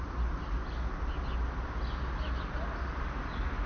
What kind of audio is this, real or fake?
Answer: real